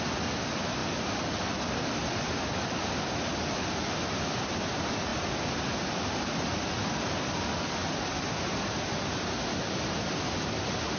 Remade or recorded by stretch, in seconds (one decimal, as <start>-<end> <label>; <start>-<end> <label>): 0.0-5.1 recorded; 5.1-6.0 remade; 6.0-11.0 recorded

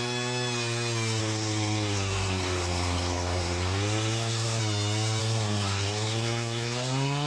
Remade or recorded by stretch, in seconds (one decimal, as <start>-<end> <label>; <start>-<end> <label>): 0.0-1.2 recorded; 1.2-4.6 remade; 4.6-5.2 recorded; 5.2-7.3 remade

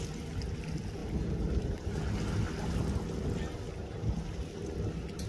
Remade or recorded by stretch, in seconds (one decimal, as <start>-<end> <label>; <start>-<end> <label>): 0.0-1.0 recorded; 1.0-2.0 remade; 2.0-5.3 recorded

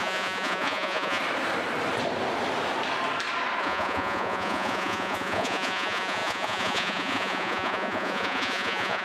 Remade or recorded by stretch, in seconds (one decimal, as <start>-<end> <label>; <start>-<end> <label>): 0.0-1.2 remade; 1.2-3.6 recorded; 3.6-9.0 remade

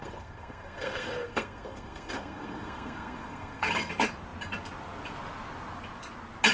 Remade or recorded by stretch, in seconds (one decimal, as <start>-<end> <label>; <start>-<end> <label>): 0.0-3.9 remade; 3.9-6.5 recorded

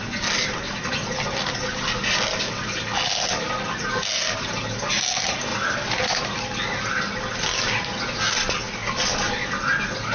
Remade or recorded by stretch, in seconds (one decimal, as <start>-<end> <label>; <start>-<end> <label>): 0.0-10.1 recorded

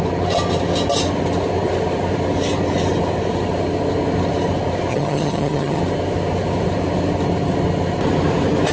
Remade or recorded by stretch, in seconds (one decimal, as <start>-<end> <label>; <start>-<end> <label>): 0.0-4.9 recorded; 4.9-5.8 remade; 5.8-8.7 recorded